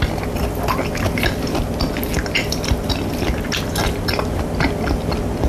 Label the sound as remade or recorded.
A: recorded